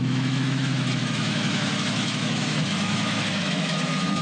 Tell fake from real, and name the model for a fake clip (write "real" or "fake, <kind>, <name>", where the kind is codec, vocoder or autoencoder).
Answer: fake, autoencoder, DAC-VAE